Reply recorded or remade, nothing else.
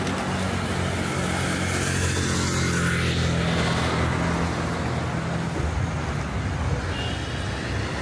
recorded